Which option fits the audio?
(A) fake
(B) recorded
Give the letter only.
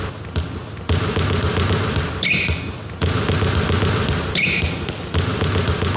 B